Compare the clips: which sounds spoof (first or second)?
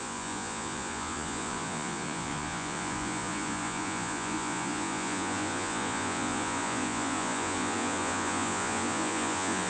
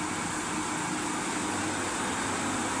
first